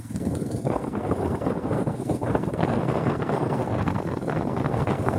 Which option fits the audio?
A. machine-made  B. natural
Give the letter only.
A